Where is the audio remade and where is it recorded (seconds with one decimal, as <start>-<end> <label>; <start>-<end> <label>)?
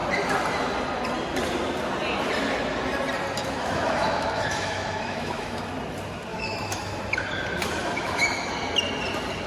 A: 0.0-3.4 recorded; 3.4-5.7 remade; 5.7-6.3 recorded; 6.3-7.0 remade; 7.0-7.8 recorded; 7.8-8.5 remade; 8.5-9.5 recorded